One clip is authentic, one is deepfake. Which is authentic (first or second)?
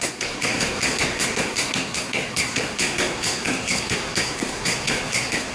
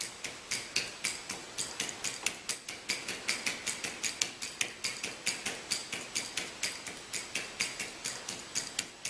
second